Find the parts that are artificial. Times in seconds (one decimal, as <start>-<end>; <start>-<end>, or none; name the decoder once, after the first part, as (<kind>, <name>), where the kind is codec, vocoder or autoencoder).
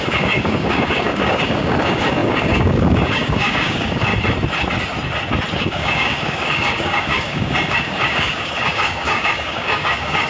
0.0-4.1 (codec, DAC); 5.6-10.3